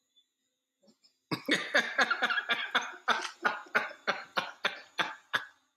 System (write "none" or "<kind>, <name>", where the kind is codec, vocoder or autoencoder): none